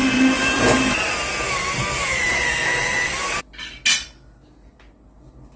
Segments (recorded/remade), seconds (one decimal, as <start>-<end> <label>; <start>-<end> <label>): 0.0-3.4 remade; 3.4-5.6 recorded